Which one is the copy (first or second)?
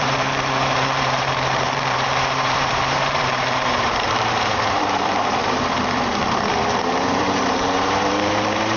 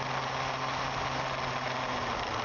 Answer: first